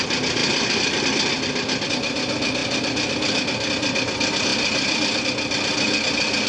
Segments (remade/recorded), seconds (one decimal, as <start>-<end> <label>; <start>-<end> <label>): 0.0-2.6 recorded; 2.6-3.7 remade; 3.7-4.5 recorded; 4.5-5.2 remade; 5.2-6.5 recorded